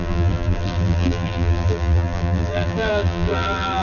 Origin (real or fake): fake